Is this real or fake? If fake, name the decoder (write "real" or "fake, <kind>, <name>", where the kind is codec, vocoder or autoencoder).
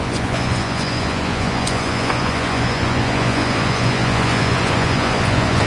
fake, vocoder, Vocos